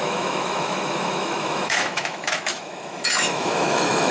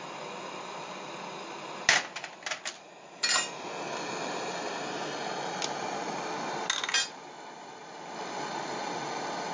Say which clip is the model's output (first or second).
first